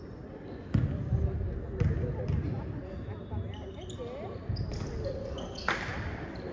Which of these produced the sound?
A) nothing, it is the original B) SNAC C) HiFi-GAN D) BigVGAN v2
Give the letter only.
A